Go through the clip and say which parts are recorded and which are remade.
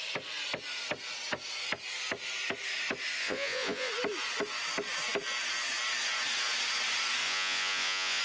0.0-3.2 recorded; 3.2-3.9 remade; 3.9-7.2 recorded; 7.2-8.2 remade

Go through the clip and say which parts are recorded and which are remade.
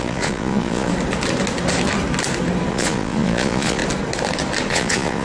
0.0-0.9 remade; 0.9-2.7 recorded; 2.7-3.8 remade; 3.8-4.7 recorded; 4.7-5.2 remade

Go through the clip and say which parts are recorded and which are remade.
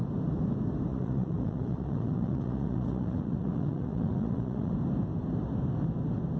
0.0-0.9 recorded; 0.9-4.7 remade; 4.7-6.4 recorded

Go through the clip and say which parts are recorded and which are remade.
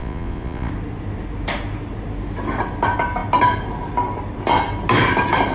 0.0-0.7 remade; 0.7-5.5 recorded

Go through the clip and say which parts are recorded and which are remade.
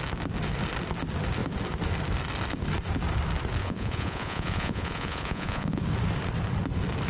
0.0-3.6 recorded; 3.6-5.8 remade; 5.8-7.1 recorded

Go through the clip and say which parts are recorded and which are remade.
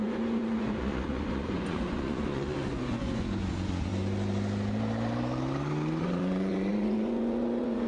0.0-3.9 remade; 3.9-6.0 recorded; 6.0-7.9 remade